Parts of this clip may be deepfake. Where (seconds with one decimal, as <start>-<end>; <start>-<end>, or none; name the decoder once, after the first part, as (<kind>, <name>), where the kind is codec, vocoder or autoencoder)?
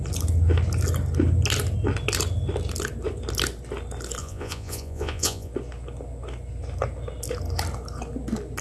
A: 4.2-5.5 (vocoder, Vocos)